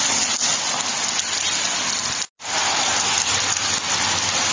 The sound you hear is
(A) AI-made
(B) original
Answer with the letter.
B